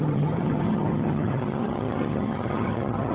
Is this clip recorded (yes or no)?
no